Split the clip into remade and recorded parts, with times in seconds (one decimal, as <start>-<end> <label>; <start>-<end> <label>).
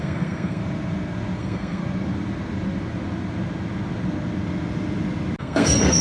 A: 0.0-0.6 remade; 0.6-1.4 recorded; 1.4-1.8 remade; 1.8-5.4 recorded; 5.4-6.0 remade